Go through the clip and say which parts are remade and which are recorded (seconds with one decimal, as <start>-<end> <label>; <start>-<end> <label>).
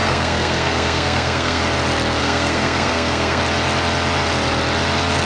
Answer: 0.0-1.6 remade; 1.6-2.2 recorded; 2.2-3.4 remade; 3.4-5.3 recorded